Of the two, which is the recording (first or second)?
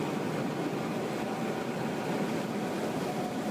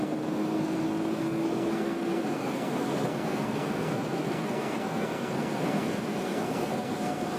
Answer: first